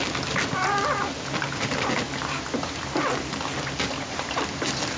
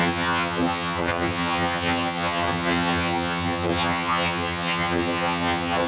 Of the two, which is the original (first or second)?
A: first